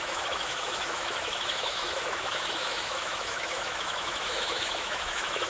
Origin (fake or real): fake